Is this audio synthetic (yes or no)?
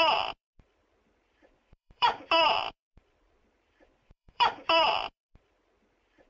yes